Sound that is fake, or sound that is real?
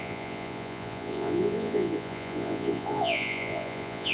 fake